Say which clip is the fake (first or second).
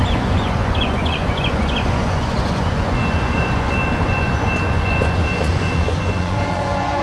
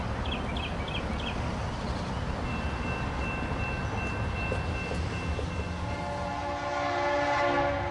first